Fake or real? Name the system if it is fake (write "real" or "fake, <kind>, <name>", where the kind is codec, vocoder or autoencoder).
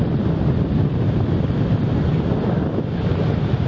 real